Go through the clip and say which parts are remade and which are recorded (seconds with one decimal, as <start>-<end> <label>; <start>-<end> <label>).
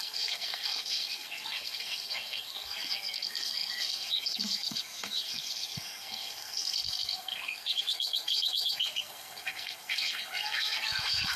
0.0-11.4 remade